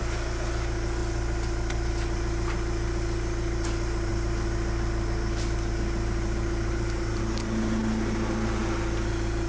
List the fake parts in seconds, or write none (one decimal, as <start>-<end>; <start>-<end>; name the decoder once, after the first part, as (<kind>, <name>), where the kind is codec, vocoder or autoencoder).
none